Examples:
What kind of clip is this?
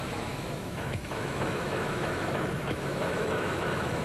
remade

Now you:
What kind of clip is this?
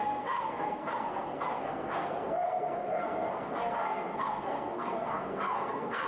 remade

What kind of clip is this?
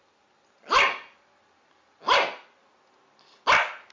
recorded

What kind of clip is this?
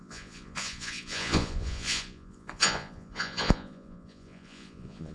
remade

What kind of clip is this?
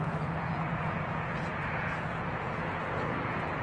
remade